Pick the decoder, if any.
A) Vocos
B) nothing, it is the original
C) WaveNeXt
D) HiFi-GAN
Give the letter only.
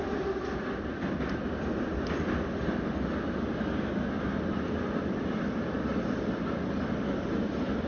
B